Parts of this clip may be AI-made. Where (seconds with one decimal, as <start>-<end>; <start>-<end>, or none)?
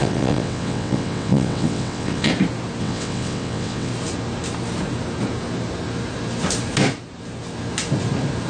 0.0-2.3; 2.8-3.9